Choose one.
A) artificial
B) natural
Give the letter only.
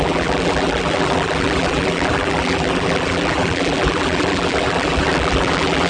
A